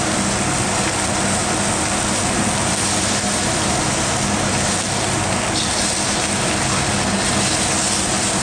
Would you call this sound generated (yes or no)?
no